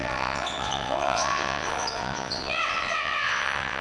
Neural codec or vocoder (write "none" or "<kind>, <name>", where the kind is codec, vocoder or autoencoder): vocoder, WaveNeXt